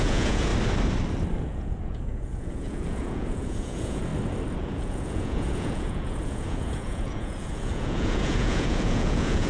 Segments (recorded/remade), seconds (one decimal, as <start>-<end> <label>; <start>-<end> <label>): 0.0-0.5 remade; 0.5-1.4 recorded; 1.4-4.1 remade; 4.1-4.6 recorded; 4.6-9.5 remade